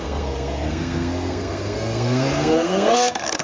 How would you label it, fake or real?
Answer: fake